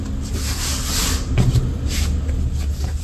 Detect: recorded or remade recorded